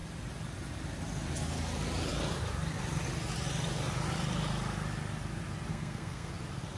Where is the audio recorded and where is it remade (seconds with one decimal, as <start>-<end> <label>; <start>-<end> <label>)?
0.0-5.7 recorded; 5.7-6.3 remade; 6.3-6.8 recorded